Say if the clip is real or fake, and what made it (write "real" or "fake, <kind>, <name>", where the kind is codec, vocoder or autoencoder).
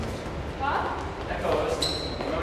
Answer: real